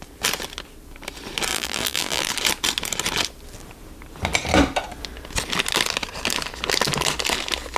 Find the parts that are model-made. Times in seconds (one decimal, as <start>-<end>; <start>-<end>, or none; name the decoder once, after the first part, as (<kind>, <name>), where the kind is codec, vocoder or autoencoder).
1.5-2.3 (vocoder, BigVGAN v2)